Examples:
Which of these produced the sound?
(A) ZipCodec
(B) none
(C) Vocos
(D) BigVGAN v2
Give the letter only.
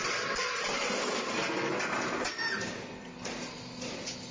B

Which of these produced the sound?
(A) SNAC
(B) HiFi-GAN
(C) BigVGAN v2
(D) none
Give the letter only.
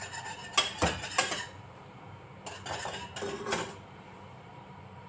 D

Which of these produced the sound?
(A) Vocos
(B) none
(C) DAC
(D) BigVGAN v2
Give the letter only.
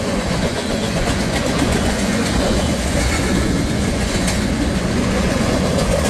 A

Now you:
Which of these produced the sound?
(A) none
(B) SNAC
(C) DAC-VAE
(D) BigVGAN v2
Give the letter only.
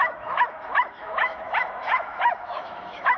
C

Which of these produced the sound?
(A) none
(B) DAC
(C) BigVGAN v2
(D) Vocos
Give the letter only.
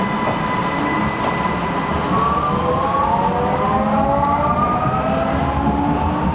A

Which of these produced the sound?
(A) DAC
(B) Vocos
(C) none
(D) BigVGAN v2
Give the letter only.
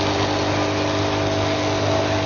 C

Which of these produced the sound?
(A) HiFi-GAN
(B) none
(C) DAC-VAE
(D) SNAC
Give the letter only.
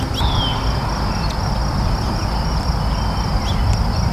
B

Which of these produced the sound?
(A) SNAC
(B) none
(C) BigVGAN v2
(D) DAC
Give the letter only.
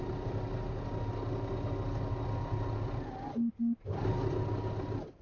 B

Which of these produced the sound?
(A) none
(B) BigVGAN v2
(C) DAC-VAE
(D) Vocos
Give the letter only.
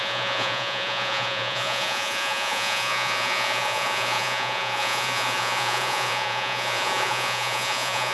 D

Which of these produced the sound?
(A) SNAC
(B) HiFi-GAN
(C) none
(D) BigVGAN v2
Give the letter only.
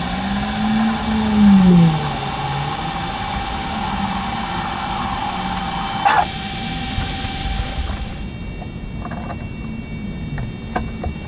C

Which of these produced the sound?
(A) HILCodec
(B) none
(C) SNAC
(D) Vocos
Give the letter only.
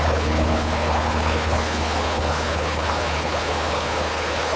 A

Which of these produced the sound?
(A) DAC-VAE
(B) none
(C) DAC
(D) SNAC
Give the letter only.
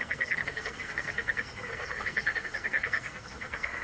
D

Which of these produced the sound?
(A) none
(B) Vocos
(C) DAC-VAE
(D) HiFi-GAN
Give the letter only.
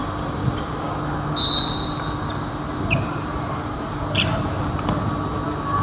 A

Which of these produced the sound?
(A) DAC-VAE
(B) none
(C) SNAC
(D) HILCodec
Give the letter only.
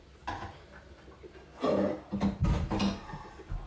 B